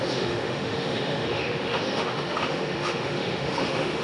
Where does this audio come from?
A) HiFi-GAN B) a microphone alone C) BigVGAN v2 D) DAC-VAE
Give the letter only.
D